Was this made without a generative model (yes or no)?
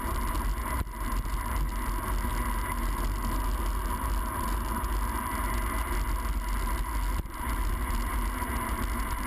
yes